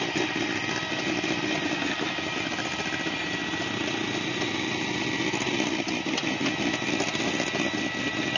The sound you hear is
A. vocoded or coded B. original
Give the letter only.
B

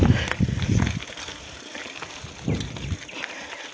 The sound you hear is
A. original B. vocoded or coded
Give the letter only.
A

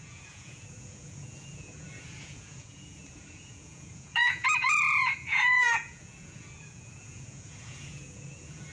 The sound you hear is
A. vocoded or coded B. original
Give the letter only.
A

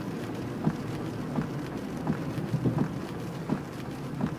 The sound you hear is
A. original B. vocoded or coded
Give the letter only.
A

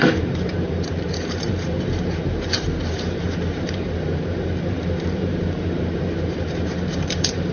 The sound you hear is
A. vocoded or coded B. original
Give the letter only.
A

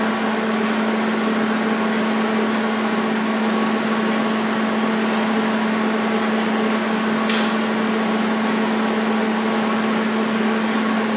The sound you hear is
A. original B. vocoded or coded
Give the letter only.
A